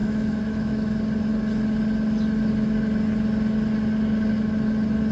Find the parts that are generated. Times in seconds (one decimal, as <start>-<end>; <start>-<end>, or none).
0.0-0.9